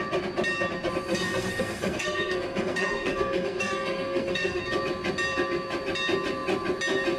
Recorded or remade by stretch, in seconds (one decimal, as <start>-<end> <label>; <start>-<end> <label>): 0.0-1.1 recorded; 1.1-4.6 remade; 4.6-7.2 recorded